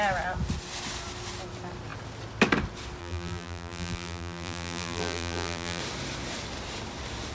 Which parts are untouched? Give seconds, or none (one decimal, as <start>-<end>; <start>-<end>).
0.0-3.0; 5.8-7.3

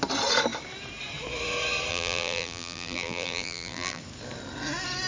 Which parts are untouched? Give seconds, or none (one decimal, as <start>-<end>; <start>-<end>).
0.0-1.9; 4.0-5.1

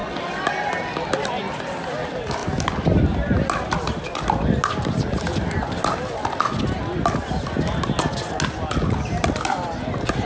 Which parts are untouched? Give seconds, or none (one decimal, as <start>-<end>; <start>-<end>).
0.0-10.3